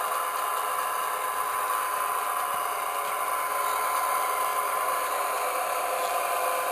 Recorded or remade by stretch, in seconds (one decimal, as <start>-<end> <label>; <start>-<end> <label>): 0.0-4.5 recorded; 4.5-6.2 remade; 6.2-6.7 recorded